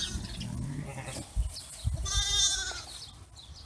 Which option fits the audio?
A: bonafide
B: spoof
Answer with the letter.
A